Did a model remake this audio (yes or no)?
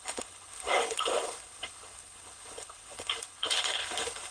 yes